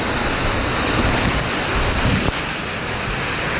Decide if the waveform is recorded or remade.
recorded